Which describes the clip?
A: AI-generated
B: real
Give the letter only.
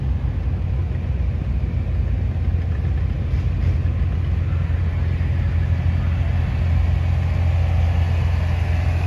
B